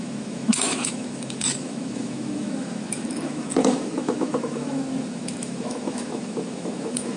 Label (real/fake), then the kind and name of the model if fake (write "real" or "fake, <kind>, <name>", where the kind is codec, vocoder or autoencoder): fake, autoencoder, DAC-VAE